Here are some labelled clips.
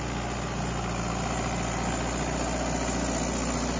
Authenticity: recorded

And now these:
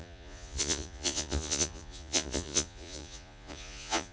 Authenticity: remade